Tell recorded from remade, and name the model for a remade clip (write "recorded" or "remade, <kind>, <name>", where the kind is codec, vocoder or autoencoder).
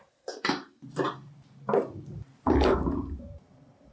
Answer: remade, vocoder, BigVGAN v2